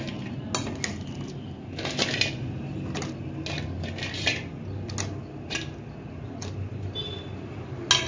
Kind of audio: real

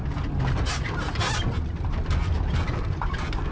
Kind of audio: real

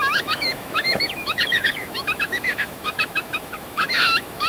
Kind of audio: fake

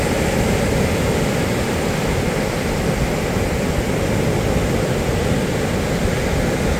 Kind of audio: real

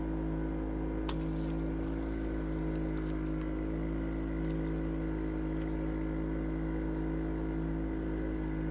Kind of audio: real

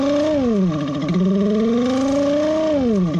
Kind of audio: real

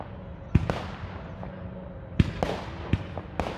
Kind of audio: real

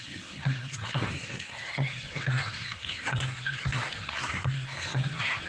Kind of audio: fake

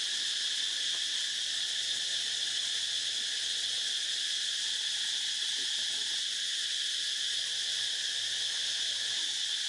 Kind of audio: real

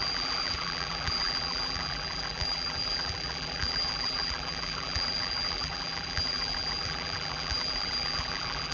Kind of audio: fake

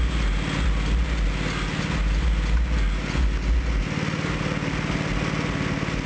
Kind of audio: real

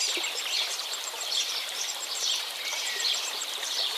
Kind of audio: fake